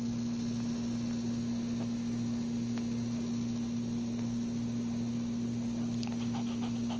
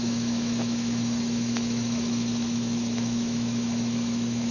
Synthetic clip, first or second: second